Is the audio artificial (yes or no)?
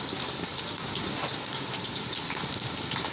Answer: no